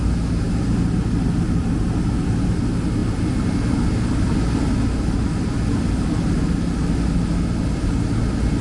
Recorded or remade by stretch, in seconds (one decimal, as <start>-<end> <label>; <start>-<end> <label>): 0.0-8.6 recorded

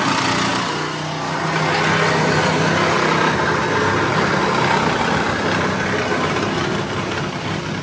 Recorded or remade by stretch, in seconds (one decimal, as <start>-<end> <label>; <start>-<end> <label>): 0.0-0.5 remade; 0.5-3.6 recorded; 3.6-7.8 remade

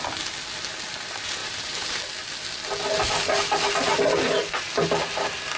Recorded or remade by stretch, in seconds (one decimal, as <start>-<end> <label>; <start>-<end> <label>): 0.0-1.4 recorded; 1.4-2.0 remade; 2.0-5.6 recorded

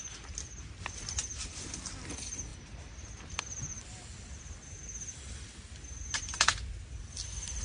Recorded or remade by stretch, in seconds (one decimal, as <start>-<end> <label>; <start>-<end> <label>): 0.0-7.6 recorded

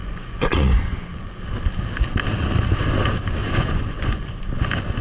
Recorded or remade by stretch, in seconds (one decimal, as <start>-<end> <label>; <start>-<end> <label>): 0.0-1.4 remade; 1.4-3.4 recorded; 3.4-4.4 remade; 4.4-5.0 recorded

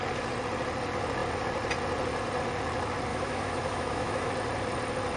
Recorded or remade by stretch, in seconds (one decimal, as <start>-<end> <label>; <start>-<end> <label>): 0.0-3.1 recorded; 3.1-4.3 remade; 4.3-5.2 recorded

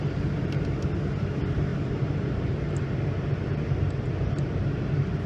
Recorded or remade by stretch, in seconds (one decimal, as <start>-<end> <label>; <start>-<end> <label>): 0.0-5.3 recorded

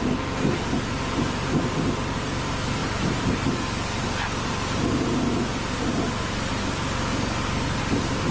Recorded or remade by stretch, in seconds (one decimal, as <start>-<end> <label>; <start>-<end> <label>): 0.0-8.3 remade